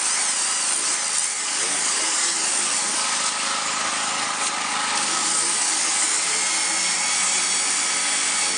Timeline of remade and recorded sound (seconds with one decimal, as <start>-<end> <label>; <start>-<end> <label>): 0.0-1.3 recorded; 1.3-6.3 remade; 6.3-8.6 recorded